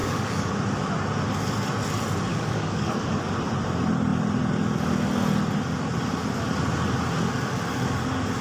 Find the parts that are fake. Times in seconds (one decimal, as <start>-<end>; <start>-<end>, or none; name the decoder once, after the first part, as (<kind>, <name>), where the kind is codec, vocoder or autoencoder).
0.0-0.5 (codec, DAC); 2.3-3.2